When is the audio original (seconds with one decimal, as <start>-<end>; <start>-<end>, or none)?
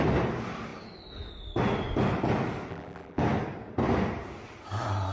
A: 0.0-2.7; 3.2-5.1